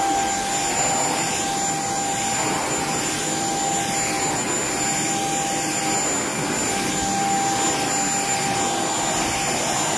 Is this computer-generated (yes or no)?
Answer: no